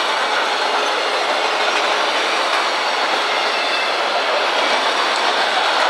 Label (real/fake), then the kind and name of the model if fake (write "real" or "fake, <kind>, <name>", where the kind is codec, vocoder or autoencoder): real